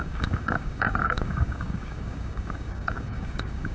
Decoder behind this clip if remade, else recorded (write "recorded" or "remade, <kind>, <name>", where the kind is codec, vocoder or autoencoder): remade, codec, DAC